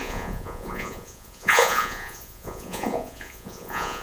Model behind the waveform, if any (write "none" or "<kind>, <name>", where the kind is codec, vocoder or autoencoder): vocoder, Vocos